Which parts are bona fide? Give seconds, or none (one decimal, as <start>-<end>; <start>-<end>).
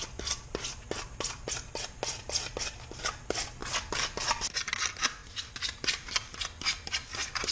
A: 0.0-7.5